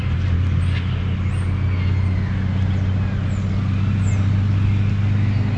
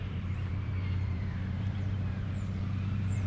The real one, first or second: first